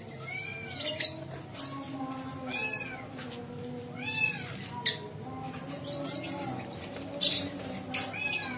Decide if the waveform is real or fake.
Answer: real